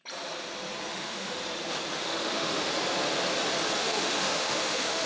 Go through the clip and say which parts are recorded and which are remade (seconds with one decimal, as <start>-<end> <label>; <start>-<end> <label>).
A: 0.0-0.9 recorded; 0.9-1.4 remade; 1.4-2.0 recorded; 2.0-2.7 remade; 2.7-3.8 recorded; 3.8-5.1 remade